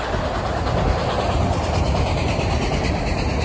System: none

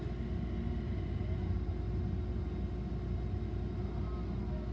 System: none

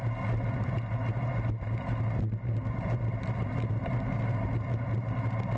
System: none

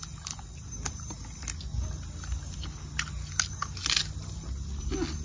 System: none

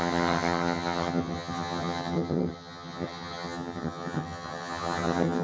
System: vocoder, HiFi-GAN